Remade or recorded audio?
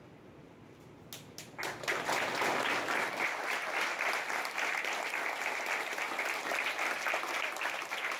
recorded